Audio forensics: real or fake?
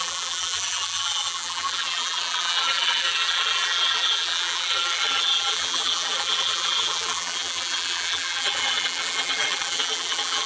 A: fake